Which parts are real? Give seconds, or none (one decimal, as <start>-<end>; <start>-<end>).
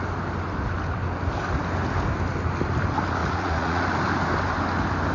0.0-3.2; 3.8-5.1